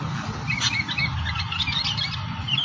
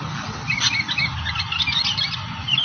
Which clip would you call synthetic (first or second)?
second